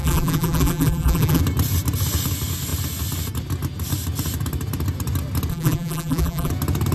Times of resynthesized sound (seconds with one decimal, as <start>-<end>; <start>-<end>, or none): 0.0-1.4; 5.5-6.5